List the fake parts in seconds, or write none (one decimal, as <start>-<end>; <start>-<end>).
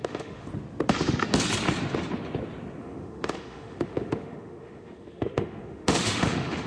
0.0-0.5; 2.8-6.7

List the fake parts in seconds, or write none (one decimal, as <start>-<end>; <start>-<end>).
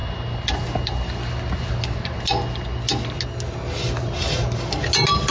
none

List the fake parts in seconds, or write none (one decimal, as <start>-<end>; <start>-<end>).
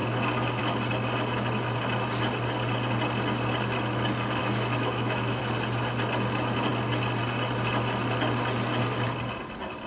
4.4-5.4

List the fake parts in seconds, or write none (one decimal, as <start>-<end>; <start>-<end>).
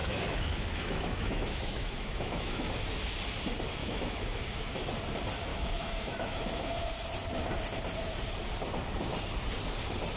0.0-2.7; 3.8-4.7; 5.5-6.9